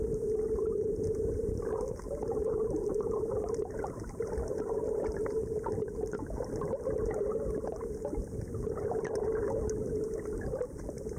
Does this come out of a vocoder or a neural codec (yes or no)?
yes